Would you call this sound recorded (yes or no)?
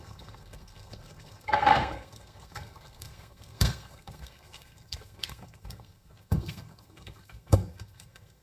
no